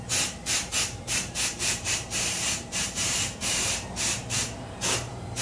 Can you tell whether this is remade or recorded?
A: remade